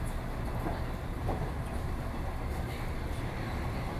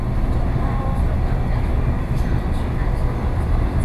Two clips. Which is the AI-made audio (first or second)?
second